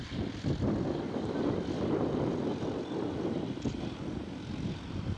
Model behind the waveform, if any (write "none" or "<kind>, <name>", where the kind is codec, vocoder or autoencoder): vocoder, BigVGAN v2